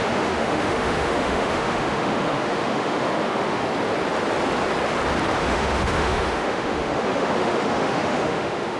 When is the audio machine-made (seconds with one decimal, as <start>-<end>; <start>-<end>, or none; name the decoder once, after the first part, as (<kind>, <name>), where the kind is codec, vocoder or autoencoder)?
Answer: 0.0-3.6 (autoencoder, DAC-VAE); 5.4-8.8